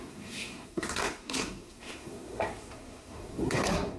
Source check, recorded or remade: remade